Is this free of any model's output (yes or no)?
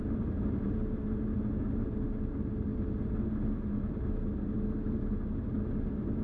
yes